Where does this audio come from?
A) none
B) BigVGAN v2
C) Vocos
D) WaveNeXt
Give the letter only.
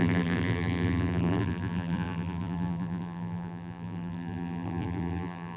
B